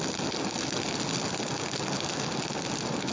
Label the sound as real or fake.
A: real